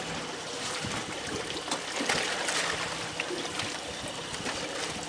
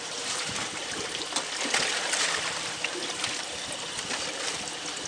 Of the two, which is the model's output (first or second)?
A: second